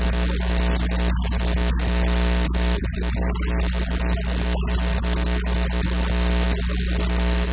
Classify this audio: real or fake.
real